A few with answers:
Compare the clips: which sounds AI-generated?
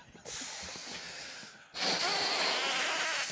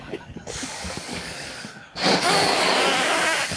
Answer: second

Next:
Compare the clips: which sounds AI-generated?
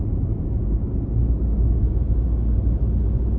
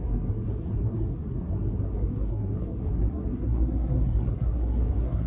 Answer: second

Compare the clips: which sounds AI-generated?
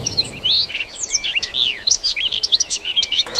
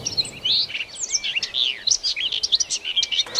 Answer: first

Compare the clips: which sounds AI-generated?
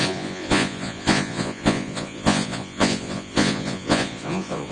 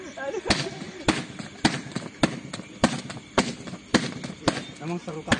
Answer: first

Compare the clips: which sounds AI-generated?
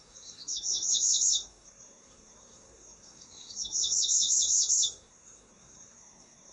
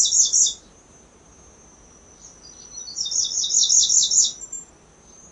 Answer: first